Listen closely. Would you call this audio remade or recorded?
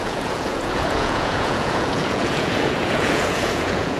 remade